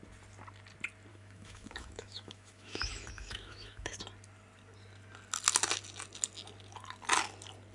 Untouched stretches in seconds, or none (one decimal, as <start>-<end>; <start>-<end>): 0.0-1.1; 3.9-7.7